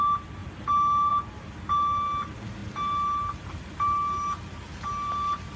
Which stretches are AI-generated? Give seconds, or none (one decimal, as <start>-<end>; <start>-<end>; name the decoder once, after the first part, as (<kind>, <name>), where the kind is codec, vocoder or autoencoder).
none